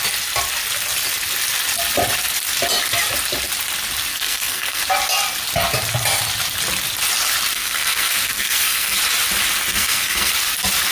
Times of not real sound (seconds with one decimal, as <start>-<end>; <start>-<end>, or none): 4.1-4.8; 7.5-9.0; 9.7-10.3